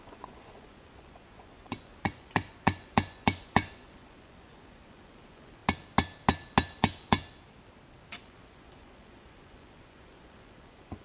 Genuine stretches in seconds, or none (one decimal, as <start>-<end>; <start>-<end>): 5.6-6.8; 7.2-8.1